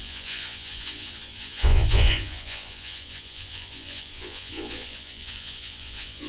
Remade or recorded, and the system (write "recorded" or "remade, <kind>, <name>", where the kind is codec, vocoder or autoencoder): remade, vocoder, Vocos